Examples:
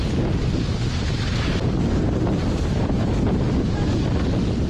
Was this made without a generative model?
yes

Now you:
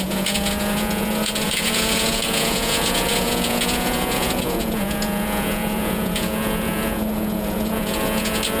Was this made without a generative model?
no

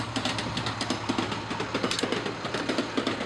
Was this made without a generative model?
yes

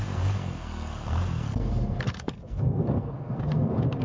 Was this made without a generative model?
no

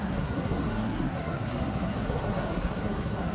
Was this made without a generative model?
no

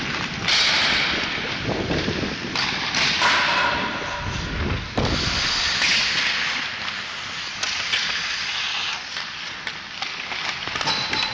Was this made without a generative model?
yes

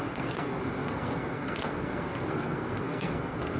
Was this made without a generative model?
no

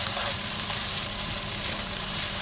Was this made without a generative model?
no